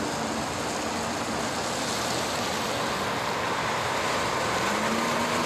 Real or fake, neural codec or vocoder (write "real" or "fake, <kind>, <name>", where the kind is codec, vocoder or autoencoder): real